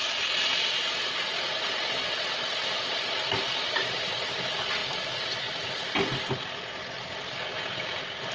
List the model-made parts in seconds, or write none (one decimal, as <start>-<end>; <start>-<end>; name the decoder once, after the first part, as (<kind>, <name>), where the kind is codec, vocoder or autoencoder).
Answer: 4.8-5.7 (vocoder, BigVGAN v2)